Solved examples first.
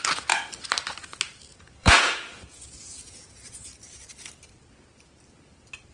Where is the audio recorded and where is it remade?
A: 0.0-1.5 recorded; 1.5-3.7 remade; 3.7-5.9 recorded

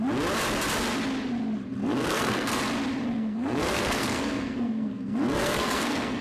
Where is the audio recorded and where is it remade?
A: 0.0-1.8 recorded; 1.8-2.6 remade; 2.6-3.0 recorded; 3.0-6.2 remade

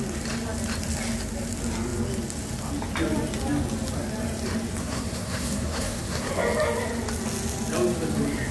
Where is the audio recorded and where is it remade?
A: 0.0-4.8 recorded; 4.8-6.3 remade; 6.3-8.5 recorded